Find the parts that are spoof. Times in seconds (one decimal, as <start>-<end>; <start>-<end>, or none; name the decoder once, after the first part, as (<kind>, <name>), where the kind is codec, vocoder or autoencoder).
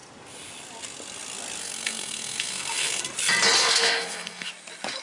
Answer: 1.6-3.0 (codec, SNAC); 3.6-4.5